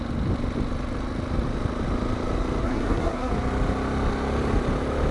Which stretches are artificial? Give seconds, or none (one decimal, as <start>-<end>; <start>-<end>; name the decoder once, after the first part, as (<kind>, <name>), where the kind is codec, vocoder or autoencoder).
2.6-3.3 (codec, SNAC)